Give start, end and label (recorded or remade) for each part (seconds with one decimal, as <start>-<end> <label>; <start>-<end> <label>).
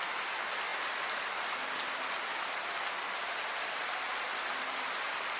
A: 0.0-5.4 recorded